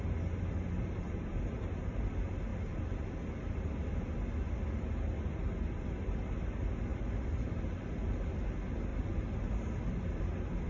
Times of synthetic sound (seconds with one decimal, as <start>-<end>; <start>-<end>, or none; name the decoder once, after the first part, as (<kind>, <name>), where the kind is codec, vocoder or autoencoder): 6.9-8.3 (vocoder, BigVGAN v2); 8.9-10.2